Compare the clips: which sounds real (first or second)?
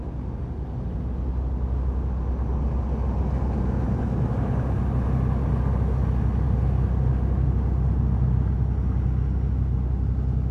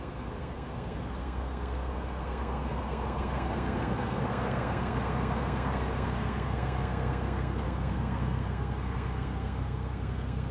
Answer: first